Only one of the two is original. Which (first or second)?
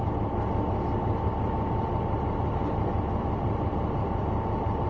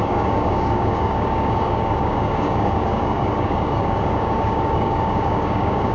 first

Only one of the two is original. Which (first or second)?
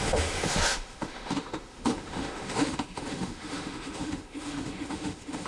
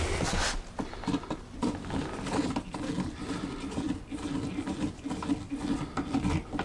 second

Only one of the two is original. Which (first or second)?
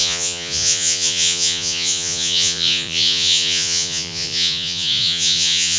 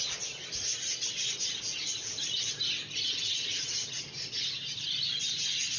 second